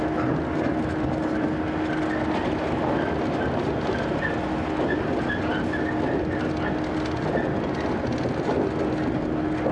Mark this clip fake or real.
real